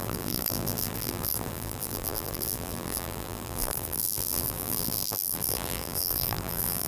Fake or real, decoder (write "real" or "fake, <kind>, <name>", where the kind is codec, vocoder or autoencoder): fake, vocoder, BigVGAN v2